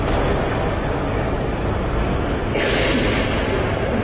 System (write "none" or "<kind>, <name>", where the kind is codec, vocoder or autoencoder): none